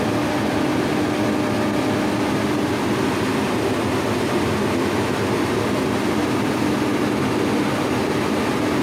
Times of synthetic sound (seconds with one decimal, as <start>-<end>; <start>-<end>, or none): none